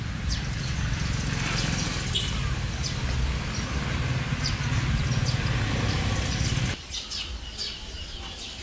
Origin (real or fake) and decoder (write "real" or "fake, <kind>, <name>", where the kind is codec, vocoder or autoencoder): real